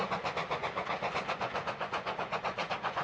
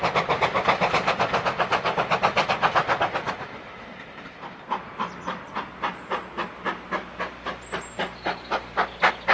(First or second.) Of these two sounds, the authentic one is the second